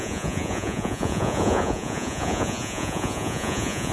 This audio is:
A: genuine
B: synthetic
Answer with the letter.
B